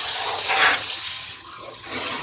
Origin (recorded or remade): remade